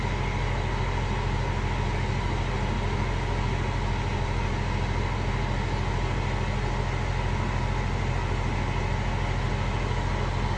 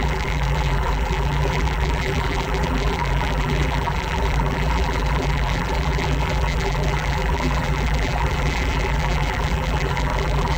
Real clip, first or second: first